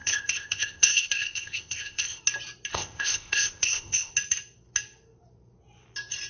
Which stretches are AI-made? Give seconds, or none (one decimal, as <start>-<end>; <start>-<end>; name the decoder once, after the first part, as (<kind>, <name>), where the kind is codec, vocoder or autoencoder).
0.0-2.2 (codec, ZipCodec); 2.7-4.1